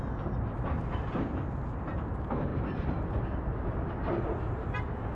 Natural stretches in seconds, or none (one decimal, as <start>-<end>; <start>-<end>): 0.0-2.5; 3.4-5.2